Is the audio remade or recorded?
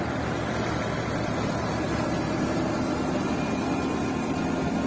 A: recorded